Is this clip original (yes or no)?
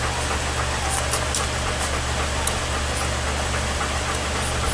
yes